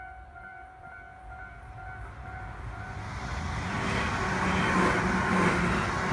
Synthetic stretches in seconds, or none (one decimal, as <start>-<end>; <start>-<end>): none